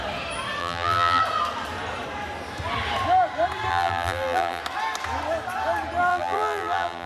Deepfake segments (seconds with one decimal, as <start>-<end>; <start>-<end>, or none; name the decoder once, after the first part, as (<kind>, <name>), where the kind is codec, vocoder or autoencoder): 0.6-1.2 (vocoder, BigVGAN v2); 3.7-4.6; 6.1-7.1